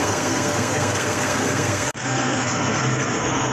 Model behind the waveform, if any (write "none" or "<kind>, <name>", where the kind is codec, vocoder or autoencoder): codec, SNAC